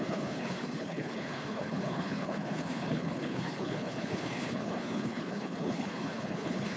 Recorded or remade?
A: remade